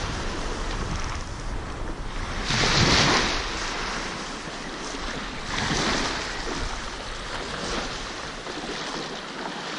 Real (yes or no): yes